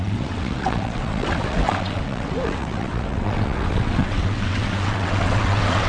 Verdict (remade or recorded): remade